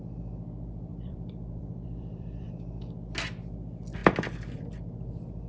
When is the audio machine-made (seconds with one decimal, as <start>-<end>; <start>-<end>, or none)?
0.9-2.5; 4.0-4.7

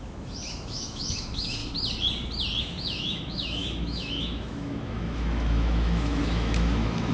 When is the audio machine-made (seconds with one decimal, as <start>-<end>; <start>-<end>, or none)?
0.0-1.6; 2.6-7.1

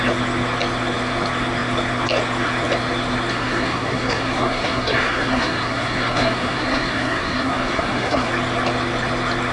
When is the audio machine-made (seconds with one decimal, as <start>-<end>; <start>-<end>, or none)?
3.3-8.3

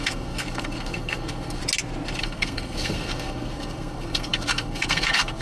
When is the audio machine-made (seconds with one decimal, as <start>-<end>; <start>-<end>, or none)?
0.0-1.6; 2.2-5.4

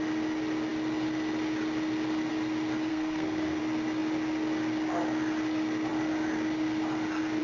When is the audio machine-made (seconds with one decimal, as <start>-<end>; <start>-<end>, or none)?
2.9-3.6

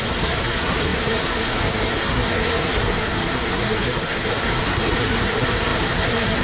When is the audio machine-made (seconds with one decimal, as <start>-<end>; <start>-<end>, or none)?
0.0-6.4